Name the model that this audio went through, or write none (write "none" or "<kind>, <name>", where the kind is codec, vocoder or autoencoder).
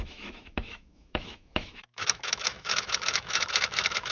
autoencoder, DAC-VAE